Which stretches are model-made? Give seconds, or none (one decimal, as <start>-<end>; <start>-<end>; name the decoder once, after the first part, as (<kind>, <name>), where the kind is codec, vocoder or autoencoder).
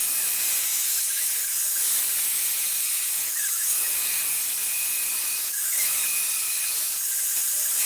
0.6-1.6 (autoencoder, DAC-VAE); 2.2-6.9